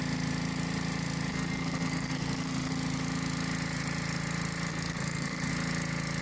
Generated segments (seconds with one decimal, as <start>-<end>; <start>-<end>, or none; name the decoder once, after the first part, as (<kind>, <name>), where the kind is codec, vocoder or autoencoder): 1.3-2.7 (codec, SNAC); 4.7-5.5